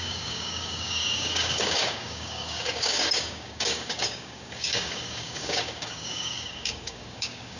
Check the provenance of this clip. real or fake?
fake